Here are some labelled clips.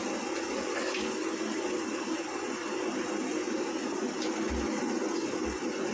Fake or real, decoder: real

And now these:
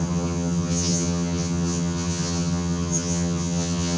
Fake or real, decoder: fake, vocoder, HiFi-GAN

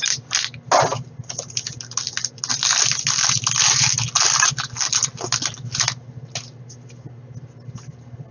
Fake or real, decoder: real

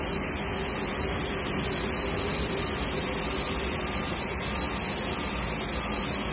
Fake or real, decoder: real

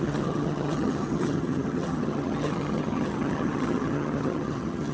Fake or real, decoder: fake, vocoder, HiFi-GAN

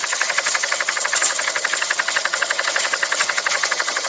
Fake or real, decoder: fake, vocoder, HiFi-GAN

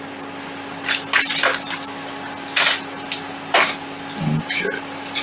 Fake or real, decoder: real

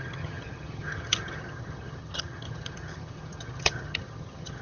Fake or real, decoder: fake, vocoder, HiFi-GAN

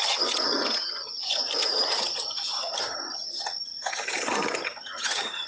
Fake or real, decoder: fake, vocoder, HiFi-GAN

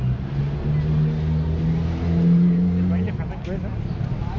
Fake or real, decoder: real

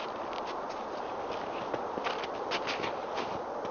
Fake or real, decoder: real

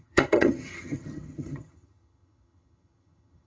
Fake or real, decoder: fake, vocoder, HiFi-GAN